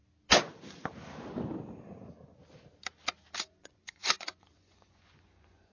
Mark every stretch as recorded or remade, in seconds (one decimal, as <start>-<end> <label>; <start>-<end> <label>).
0.0-3.4 recorded; 3.4-5.7 remade